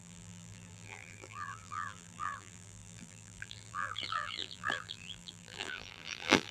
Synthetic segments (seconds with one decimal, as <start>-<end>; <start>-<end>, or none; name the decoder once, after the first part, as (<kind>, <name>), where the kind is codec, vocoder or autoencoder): 0.0-6.5 (vocoder, BigVGAN v2)